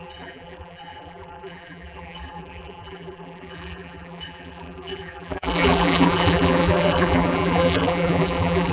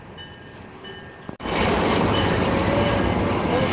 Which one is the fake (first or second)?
first